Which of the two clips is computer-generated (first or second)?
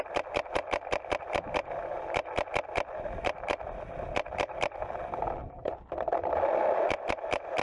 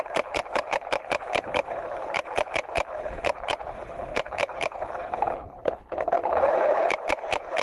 second